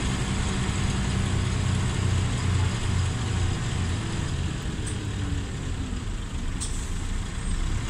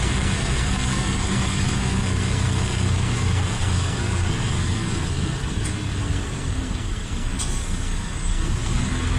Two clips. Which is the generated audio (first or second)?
second